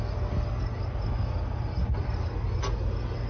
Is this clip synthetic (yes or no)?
no